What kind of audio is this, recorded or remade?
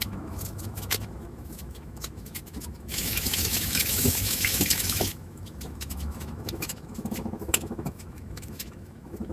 remade